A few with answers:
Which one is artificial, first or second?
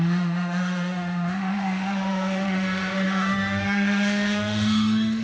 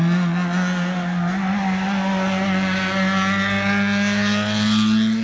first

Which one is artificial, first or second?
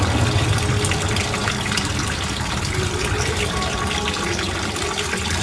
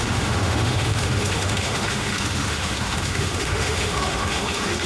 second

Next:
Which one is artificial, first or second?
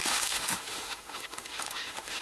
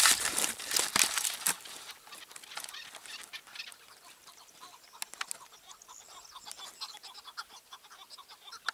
first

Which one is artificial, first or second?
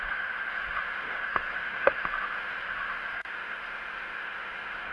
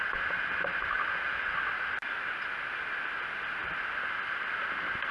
first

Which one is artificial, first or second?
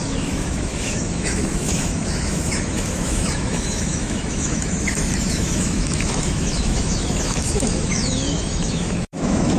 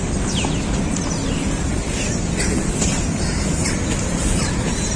first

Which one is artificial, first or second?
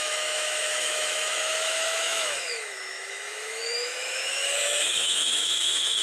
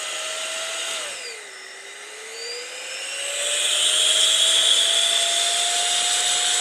first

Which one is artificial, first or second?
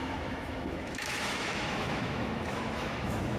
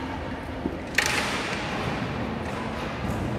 first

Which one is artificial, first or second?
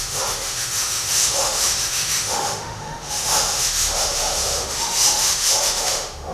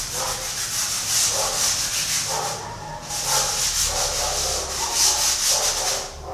first